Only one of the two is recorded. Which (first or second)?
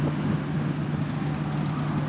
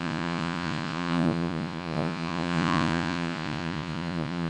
first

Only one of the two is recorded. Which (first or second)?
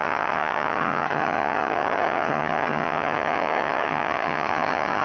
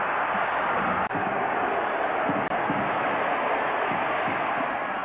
second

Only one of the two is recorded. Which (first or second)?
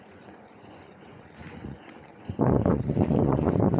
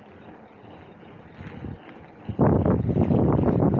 second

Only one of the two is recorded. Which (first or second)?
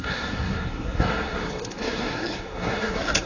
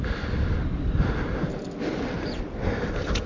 second